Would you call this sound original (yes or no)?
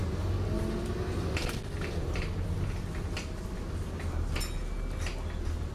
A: yes